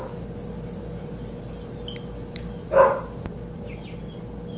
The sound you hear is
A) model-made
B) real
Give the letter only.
B